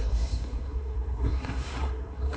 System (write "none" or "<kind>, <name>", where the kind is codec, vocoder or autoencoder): codec, SNAC